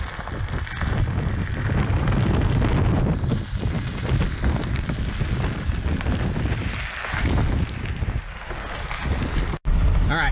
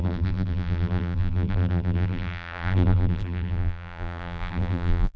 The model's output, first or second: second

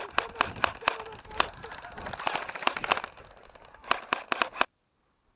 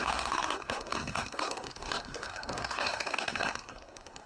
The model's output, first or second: second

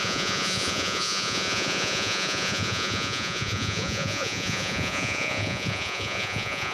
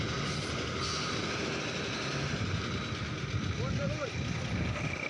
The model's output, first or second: first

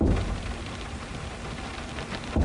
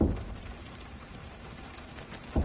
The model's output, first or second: second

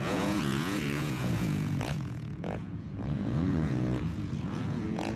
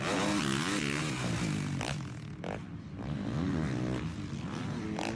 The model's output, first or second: first